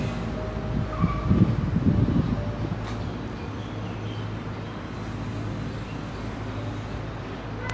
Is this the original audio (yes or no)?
yes